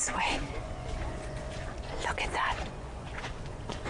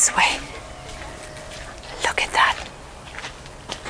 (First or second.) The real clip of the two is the second